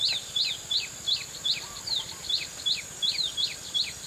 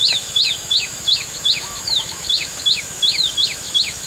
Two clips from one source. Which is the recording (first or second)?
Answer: first